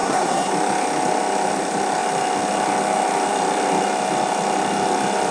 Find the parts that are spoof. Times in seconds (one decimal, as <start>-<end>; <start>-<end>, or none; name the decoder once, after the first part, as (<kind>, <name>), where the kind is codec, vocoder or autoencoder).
0.0-0.5 (codec, SNAC)